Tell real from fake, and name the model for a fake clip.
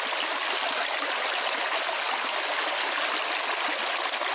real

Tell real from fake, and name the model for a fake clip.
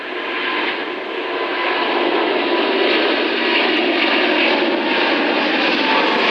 real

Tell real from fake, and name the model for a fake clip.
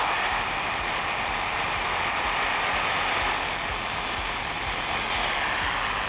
real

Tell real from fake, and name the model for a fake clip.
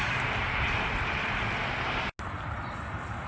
real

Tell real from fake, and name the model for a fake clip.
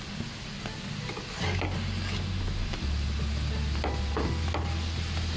real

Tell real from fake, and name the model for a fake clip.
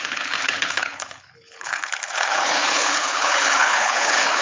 fake, codec, HILCodec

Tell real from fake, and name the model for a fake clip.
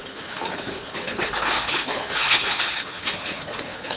fake, codec, HILCodec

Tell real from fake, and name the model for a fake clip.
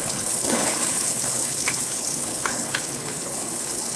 fake, codec, HILCodec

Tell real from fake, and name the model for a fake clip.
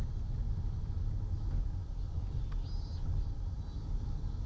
real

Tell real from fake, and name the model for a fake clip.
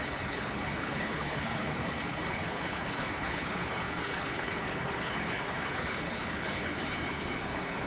fake, codec, HILCodec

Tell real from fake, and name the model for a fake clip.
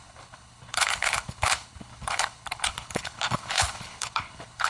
fake, codec, HILCodec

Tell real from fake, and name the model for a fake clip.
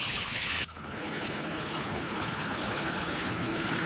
fake, codec, HILCodec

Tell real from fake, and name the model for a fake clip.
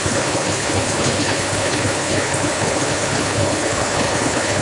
fake, codec, HILCodec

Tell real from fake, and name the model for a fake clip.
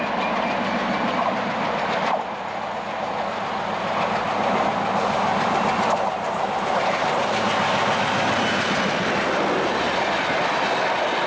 real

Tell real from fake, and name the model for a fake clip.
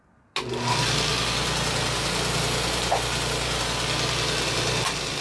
real